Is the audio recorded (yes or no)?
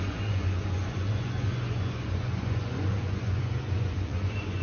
no